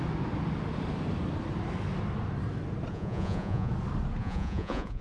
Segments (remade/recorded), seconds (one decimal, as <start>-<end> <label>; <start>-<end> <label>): 0.0-2.9 recorded; 2.9-3.7 remade; 3.7-4.2 recorded; 4.2-5.0 remade